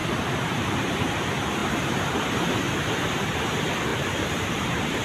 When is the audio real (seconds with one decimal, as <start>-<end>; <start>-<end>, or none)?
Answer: 0.7-1.6; 3.4-3.9